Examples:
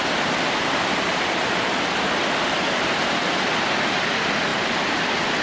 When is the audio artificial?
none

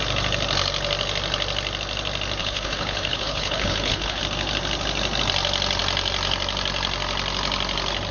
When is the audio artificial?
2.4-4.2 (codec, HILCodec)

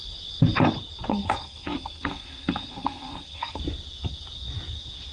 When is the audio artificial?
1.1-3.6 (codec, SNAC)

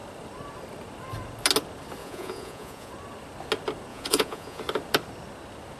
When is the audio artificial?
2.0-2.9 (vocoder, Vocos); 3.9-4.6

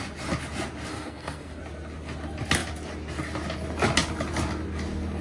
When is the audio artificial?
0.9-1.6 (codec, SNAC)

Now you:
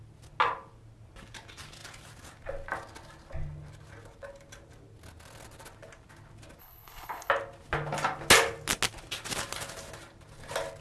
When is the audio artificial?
6.6-7.3 (codec, HILCodec)